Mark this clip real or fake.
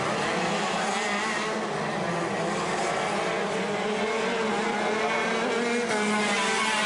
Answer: real